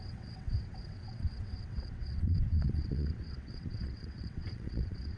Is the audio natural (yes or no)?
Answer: no